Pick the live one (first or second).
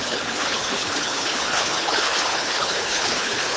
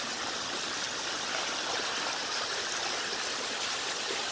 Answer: second